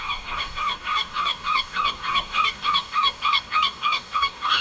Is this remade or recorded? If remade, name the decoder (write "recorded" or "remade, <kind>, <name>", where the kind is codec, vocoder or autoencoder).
remade, codec, DAC